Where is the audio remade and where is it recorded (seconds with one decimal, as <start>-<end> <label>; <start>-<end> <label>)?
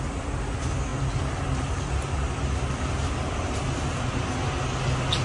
0.0-5.2 recorded